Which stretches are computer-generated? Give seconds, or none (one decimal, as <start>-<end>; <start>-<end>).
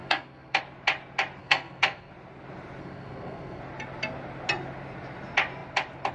0.0-0.6; 1.4-2.1; 2.8-3.6